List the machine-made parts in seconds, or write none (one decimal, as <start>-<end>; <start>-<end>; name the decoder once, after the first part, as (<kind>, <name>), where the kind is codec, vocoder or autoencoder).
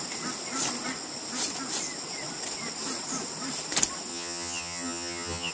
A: 4.1-5.5 (vocoder, HiFi-GAN)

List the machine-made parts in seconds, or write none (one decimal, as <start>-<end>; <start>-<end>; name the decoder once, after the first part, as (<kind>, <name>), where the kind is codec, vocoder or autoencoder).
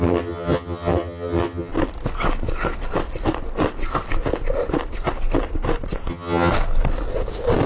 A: 0.0-1.7 (vocoder, HiFi-GAN); 6.1-6.5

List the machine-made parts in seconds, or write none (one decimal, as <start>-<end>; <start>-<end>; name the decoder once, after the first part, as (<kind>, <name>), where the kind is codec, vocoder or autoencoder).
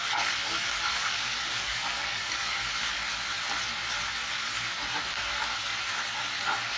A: 0.9-2.7 (codec, DAC)